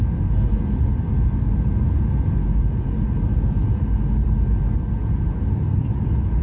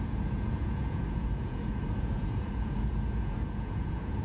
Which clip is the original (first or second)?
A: first